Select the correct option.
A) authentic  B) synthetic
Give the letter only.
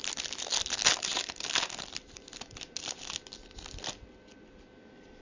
A